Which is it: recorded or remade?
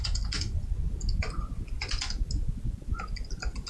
recorded